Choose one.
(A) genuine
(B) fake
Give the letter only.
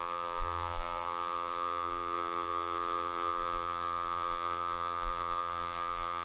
B